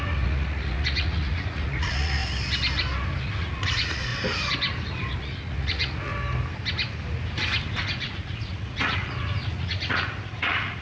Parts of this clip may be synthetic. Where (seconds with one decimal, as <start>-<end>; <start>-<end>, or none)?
0.0-2.2; 3.2-4.1; 5.2-6.1; 8.0-10.8